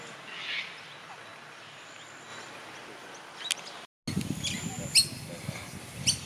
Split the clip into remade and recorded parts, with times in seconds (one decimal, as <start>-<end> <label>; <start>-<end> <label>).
0.0-6.3 recorded